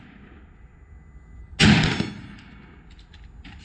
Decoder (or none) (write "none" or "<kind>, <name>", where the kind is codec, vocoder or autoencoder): none